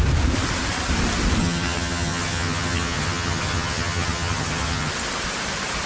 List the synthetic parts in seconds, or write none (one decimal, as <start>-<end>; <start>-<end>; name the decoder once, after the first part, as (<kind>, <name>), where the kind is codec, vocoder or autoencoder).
1.4-4.9 (vocoder, HiFi-GAN)